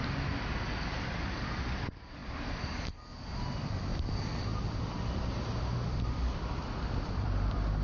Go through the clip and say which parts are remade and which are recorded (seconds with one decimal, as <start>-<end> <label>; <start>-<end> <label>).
0.0-2.2 remade; 2.2-3.4 recorded; 3.4-3.9 remade; 3.9-5.2 recorded; 5.2-7.8 remade